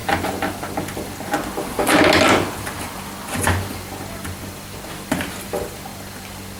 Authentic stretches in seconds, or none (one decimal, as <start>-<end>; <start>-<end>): 0.0-2.6; 3.2-4.1; 5.9-6.6